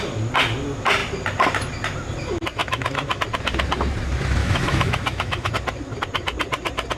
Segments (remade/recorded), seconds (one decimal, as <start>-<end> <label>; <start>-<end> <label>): 0.0-2.6 recorded; 2.6-3.2 remade; 3.2-4.4 recorded; 4.4-5.5 remade; 5.5-7.0 recorded